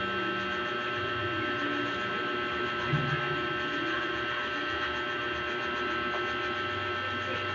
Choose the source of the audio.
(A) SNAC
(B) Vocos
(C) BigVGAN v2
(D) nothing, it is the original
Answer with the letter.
D